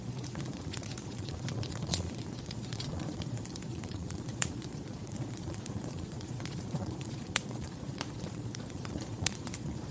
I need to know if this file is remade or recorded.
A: remade